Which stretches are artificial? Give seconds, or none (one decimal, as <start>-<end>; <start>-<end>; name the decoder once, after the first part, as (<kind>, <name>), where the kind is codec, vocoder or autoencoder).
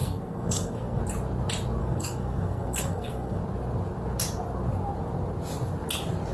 0.0-1.0 (codec, SNAC); 1.8-3.4